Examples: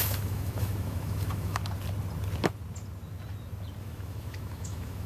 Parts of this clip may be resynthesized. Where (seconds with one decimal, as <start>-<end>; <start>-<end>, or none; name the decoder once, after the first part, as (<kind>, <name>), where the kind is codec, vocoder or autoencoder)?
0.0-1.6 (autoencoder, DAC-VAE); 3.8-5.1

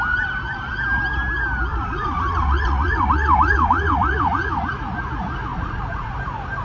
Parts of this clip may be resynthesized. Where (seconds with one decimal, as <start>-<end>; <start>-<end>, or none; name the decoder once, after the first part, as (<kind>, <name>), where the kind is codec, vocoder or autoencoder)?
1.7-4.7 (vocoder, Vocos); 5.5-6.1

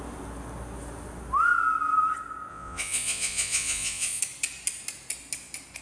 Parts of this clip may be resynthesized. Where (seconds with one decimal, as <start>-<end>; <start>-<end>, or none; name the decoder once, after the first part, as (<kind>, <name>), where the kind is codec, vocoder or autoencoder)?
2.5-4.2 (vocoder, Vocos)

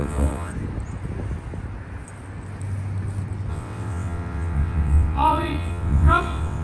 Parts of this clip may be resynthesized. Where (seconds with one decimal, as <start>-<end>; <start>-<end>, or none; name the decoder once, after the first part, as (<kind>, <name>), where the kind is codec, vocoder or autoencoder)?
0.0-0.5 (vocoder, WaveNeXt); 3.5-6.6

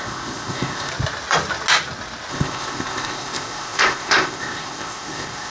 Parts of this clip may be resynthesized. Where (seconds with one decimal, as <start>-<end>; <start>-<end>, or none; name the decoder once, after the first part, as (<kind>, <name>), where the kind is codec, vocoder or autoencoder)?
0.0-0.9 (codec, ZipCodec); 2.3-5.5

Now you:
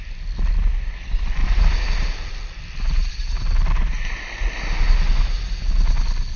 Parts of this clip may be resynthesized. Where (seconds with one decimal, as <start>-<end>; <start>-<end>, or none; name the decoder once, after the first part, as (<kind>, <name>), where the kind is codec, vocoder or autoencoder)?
none

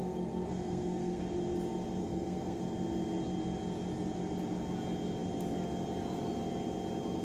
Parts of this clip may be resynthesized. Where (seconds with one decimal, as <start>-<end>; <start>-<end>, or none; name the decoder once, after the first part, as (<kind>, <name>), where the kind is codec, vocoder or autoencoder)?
0.0-1.2 (codec, SNAC); 2.0-2.6

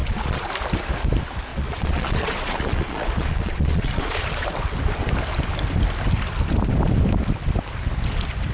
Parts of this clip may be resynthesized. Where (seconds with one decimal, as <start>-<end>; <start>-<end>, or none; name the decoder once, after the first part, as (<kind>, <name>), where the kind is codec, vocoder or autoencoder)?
0.0-0.5 (vocoder, Vocos); 1.5-4.2